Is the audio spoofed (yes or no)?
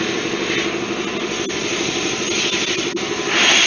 no